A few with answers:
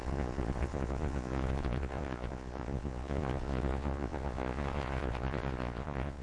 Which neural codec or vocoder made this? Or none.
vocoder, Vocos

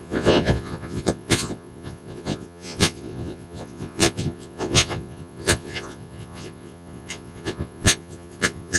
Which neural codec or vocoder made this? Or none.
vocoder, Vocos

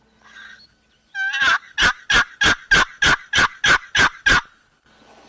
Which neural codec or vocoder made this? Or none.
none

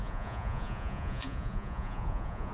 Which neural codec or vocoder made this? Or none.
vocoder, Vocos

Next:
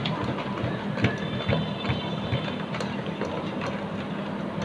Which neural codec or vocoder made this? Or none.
none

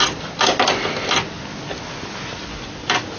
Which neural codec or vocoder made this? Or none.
none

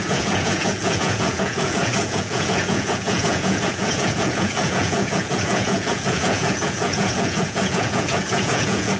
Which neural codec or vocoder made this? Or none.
vocoder, Vocos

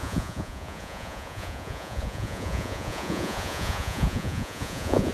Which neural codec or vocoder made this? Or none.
vocoder, Vocos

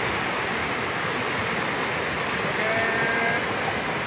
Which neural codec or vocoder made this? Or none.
none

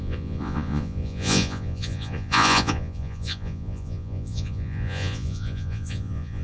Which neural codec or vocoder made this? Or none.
vocoder, Vocos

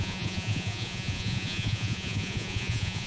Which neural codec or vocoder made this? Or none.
vocoder, Vocos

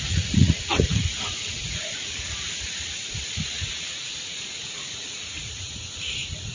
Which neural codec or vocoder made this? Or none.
vocoder, Vocos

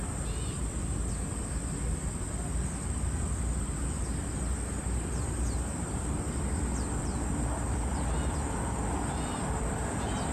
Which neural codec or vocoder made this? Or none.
none